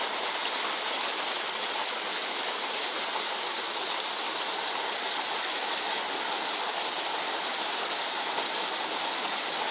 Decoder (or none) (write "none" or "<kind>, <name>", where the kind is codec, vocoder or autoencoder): vocoder, BigVGAN v2